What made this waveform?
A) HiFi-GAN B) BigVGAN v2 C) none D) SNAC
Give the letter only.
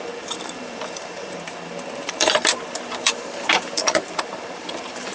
B